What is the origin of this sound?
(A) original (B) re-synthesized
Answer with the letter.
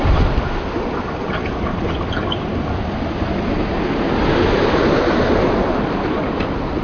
A